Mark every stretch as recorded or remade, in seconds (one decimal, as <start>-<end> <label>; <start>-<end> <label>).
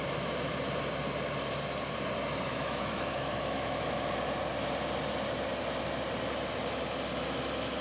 0.0-2.5 recorded; 2.5-4.1 remade; 4.1-7.8 recorded